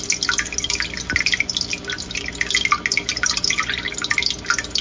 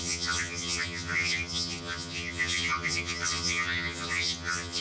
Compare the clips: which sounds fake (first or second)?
second